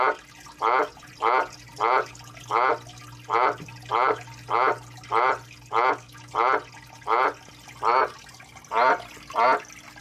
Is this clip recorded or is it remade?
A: recorded